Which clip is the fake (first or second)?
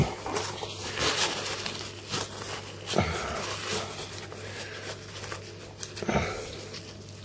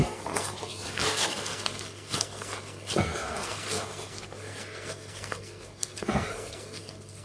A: second